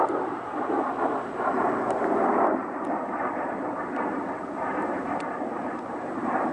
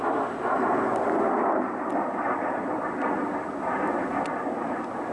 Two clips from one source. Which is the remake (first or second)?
first